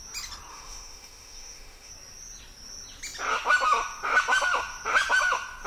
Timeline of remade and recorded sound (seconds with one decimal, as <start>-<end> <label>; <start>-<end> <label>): 0.0-0.5 recorded; 0.5-1.9 remade; 1.9-5.7 recorded